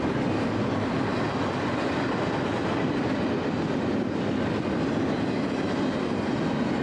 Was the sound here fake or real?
real